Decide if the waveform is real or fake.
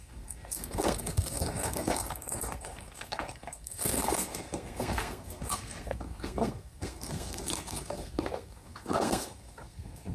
fake